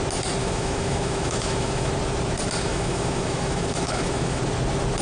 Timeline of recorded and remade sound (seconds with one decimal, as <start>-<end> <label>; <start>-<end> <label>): 0.0-0.4 recorded; 0.4-1.9 remade; 1.9-2.7 recorded; 2.7-4.4 remade; 4.4-5.0 recorded